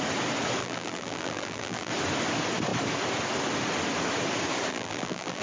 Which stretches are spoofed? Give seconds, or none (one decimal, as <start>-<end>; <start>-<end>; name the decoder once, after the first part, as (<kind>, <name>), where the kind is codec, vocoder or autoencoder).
0.6-1.9 (vocoder, BigVGAN v2); 4.7-5.4